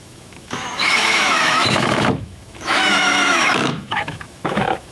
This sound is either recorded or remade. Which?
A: remade